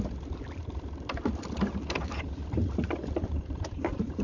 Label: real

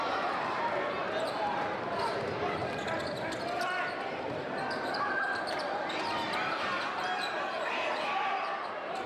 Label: real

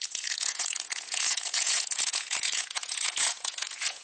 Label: fake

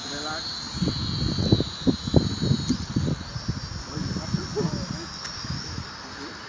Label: real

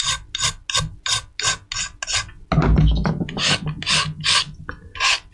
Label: real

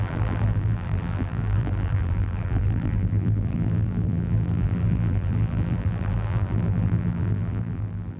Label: fake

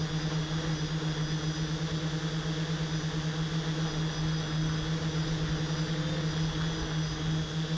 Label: real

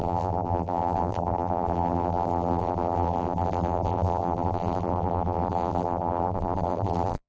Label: fake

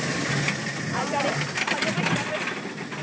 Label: real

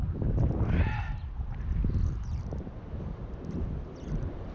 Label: real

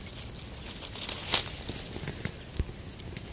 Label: real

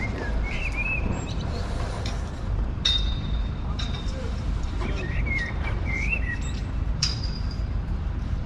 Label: fake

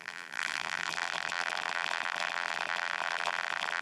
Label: fake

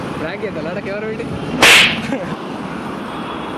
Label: real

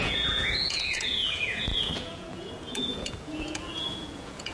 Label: fake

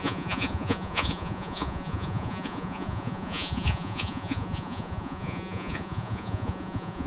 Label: fake